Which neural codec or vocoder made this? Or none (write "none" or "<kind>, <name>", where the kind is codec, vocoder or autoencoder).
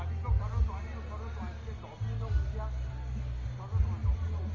none